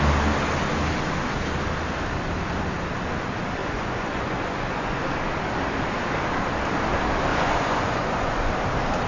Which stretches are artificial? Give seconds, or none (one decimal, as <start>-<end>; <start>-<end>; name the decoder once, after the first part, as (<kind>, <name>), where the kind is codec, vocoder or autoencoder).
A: 3.6-5.0 (vocoder, Vocos); 7.3-8.5